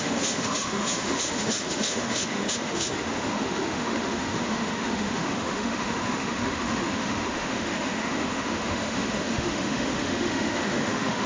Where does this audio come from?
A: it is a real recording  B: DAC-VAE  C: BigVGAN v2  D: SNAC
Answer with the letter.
B